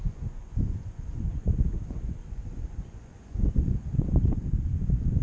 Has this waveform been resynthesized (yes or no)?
yes